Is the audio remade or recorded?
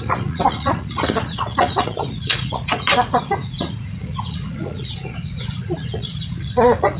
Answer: remade